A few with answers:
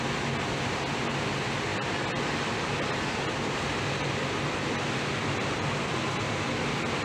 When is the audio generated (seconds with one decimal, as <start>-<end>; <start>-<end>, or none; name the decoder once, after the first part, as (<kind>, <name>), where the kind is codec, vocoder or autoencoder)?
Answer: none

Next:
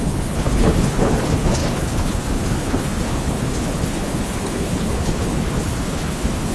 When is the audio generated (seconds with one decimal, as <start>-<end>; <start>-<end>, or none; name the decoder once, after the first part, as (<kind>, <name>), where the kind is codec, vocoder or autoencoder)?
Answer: 0.0-6.5 (codec, HILCodec)

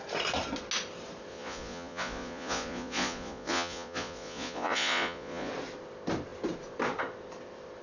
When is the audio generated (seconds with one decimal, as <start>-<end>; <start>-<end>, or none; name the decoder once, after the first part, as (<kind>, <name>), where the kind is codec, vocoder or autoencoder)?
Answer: 1.3-5.5 (vocoder, Vocos)

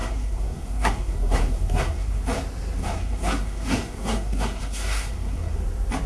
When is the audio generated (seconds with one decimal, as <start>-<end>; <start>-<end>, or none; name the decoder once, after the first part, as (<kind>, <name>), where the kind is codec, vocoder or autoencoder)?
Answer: 0.0-2.2 (codec, SNAC); 2.8-5.6